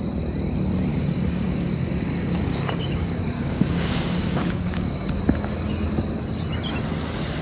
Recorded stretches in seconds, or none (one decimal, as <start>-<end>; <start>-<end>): 0.0-0.9; 5.2-7.4